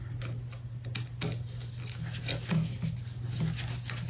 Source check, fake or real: real